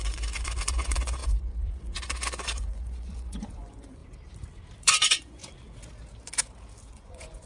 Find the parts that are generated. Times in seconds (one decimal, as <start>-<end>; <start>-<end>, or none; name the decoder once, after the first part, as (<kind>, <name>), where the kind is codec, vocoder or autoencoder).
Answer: 0.0-4.0 (vocoder, Vocos); 4.8-5.4; 6.9-7.5